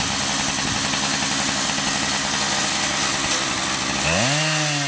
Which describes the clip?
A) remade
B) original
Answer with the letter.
B